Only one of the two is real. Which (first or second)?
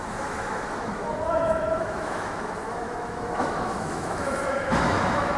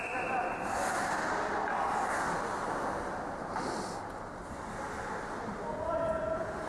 second